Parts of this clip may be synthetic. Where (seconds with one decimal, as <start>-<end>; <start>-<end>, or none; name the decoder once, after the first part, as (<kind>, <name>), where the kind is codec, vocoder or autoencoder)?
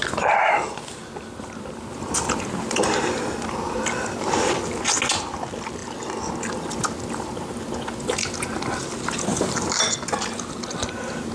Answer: 9.3-9.8 (vocoder, BigVGAN v2)